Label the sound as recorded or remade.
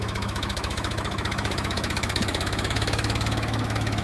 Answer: remade